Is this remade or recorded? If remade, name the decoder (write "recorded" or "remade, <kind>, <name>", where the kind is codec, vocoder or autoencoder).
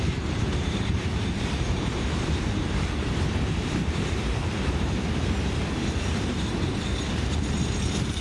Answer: remade, vocoder, BigVGAN v2